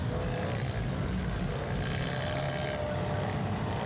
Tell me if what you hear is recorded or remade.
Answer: recorded